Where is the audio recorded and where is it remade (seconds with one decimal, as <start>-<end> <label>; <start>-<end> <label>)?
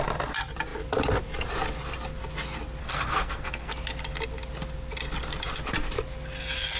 0.0-2.8 recorded; 2.8-3.7 remade; 3.7-6.8 recorded